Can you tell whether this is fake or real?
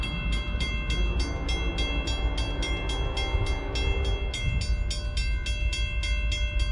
real